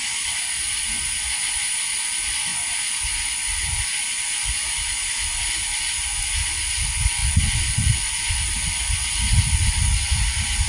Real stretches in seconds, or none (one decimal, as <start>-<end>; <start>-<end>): 0.0-7.2; 9.7-10.7